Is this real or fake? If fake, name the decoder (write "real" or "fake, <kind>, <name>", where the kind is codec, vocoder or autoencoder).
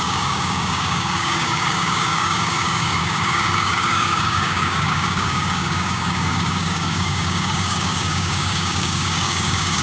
fake, codec, DAC